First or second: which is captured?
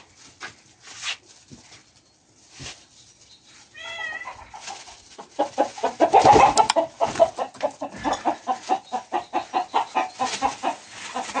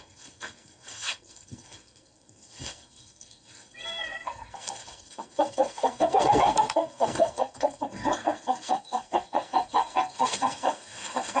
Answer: first